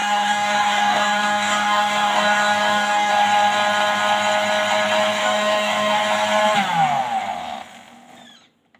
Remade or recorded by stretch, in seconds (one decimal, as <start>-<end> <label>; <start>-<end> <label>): 0.0-3.1 remade; 3.1-5.2 recorded; 5.2-6.0 remade; 6.0-8.8 recorded